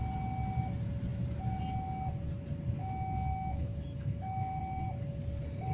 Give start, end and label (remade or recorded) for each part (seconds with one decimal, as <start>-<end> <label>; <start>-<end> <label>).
0.0-2.8 recorded; 2.8-4.6 remade; 4.6-5.7 recorded

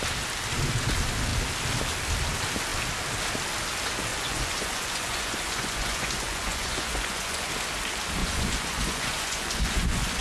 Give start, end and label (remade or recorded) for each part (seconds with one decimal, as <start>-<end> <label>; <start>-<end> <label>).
0.0-4.1 recorded; 4.1-7.5 remade; 7.5-8.2 recorded; 8.2-10.2 remade

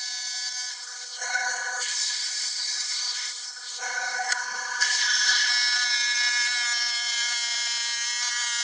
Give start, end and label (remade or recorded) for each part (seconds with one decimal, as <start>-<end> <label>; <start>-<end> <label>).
0.0-0.7 recorded; 0.7-5.5 remade; 5.5-8.6 recorded

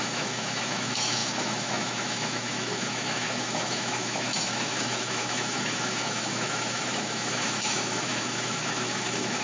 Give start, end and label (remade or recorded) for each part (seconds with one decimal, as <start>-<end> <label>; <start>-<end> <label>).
0.0-9.4 remade

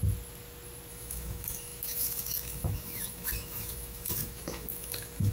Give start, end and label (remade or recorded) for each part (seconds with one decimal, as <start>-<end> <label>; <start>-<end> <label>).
0.0-0.9 recorded; 0.9-5.3 remade

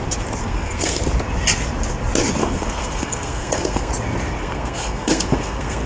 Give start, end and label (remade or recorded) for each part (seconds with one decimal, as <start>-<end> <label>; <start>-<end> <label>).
0.0-0.4 recorded; 0.4-1.0 remade; 1.0-2.4 recorded; 2.4-3.9 remade; 3.9-4.4 recorded; 4.4-5.9 remade

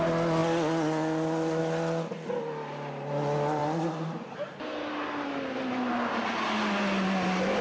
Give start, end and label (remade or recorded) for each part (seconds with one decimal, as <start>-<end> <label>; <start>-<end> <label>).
0.0-7.6 recorded